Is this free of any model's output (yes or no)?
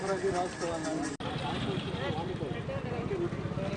yes